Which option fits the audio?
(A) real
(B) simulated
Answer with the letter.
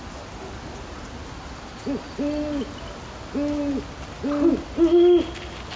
A